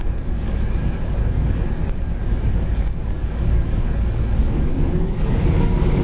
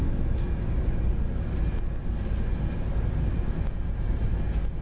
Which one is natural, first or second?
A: second